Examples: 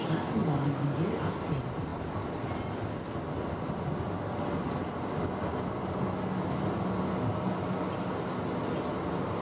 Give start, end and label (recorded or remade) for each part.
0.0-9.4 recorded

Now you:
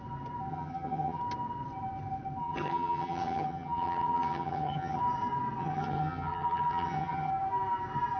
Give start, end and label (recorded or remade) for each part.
0.0-0.5 recorded; 0.5-1.2 remade; 1.2-2.4 recorded; 2.4-5.0 remade; 5.0-5.6 recorded; 5.6-7.3 remade; 7.3-8.2 recorded

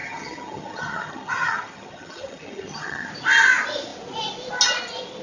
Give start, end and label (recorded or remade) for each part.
0.0-3.1 remade; 3.1-5.2 recorded

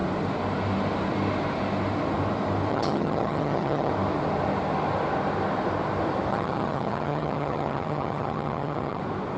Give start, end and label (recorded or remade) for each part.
0.0-2.7 recorded; 2.7-3.9 remade; 3.9-6.3 recorded; 6.3-9.0 remade; 9.0-9.4 recorded

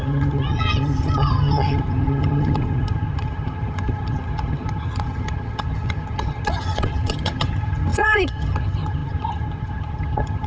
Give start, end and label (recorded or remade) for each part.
0.0-10.5 remade

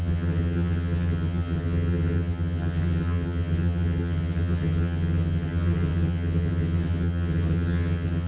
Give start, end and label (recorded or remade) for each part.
0.0-8.3 remade

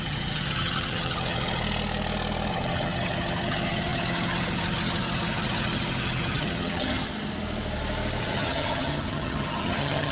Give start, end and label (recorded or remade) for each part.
0.0-1.6 remade; 1.6-2.5 recorded; 2.5-7.1 remade; 7.1-8.2 recorded; 8.2-10.1 remade